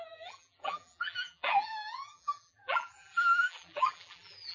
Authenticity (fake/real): fake